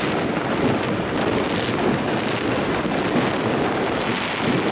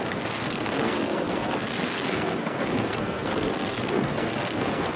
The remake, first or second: second